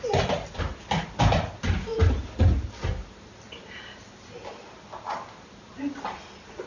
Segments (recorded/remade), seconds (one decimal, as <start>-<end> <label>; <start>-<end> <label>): 0.0-6.7 recorded